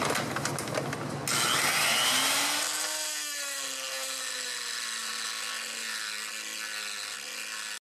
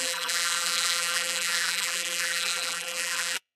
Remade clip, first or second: second